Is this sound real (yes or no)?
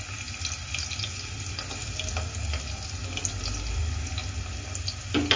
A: yes